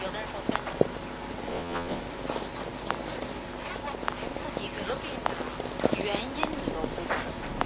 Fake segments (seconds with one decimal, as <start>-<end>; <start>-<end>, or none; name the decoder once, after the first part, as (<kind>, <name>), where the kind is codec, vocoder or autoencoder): 1.5-2.0 (vocoder, Vocos)

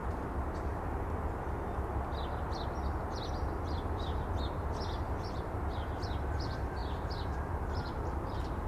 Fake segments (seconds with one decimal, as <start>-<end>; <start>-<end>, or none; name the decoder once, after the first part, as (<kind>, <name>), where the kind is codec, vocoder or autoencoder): 5.1-8.7 (vocoder, BigVGAN v2)

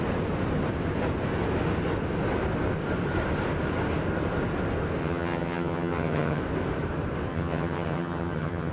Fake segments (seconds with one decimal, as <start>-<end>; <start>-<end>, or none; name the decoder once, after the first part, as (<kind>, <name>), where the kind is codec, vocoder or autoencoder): 5.0-6.4 (vocoder, HiFi-GAN); 7.3-8.7

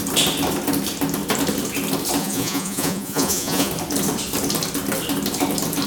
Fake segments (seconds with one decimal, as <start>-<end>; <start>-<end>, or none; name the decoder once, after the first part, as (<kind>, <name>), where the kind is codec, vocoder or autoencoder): 2.2-3.7 (vocoder, Vocos)

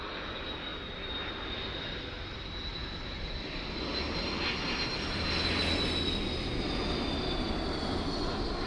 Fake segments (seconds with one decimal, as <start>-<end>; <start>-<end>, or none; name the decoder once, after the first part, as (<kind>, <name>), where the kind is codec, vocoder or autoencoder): none

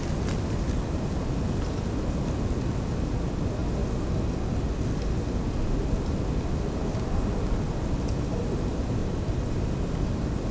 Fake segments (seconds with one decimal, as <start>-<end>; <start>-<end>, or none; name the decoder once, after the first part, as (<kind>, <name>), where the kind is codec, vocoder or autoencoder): none

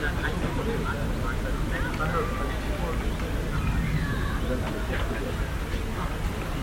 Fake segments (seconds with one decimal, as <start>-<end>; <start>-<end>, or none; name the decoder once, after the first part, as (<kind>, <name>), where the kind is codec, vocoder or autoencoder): none